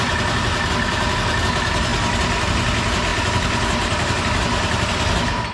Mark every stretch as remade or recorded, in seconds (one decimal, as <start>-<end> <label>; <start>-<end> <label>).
0.0-5.5 recorded